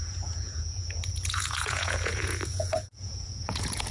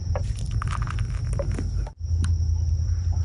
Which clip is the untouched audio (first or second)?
second